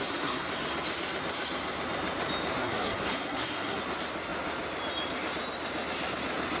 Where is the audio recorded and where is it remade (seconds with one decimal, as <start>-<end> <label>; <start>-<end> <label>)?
0.0-0.5 remade; 0.5-2.6 recorded; 2.6-3.8 remade; 3.8-6.6 recorded